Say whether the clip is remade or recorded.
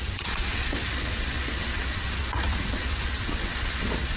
remade